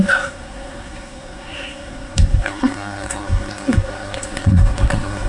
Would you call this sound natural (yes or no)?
no